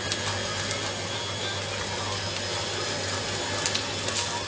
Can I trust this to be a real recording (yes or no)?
yes